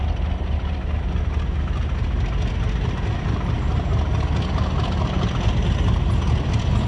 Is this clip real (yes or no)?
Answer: yes